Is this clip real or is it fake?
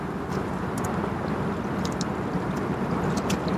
real